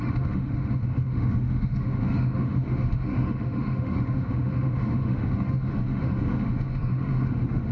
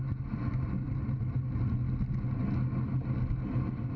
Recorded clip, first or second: second